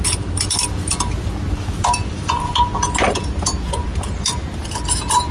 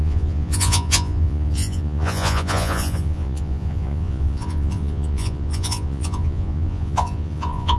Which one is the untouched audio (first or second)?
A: first